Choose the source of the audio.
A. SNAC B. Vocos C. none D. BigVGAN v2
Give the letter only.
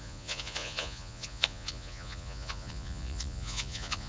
B